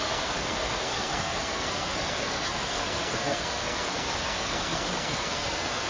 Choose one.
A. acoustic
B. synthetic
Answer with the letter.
B